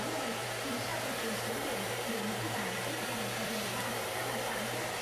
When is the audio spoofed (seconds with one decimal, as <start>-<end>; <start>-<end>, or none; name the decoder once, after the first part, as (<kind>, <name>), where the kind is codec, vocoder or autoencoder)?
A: 0.0-5.0 (vocoder, BigVGAN v2)